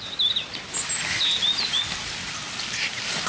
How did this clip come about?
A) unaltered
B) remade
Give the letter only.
A